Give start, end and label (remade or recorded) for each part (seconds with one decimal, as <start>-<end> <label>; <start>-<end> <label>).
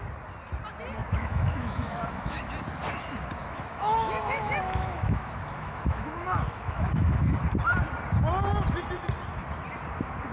0.0-1.0 recorded; 1.0-2.4 remade; 2.4-3.4 recorded; 3.4-7.4 remade; 7.4-10.3 recorded